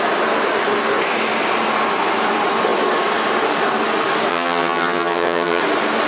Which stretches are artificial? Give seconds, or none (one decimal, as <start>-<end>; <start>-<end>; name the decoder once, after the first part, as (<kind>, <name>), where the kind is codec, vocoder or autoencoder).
4.3-5.6 (vocoder, HiFi-GAN)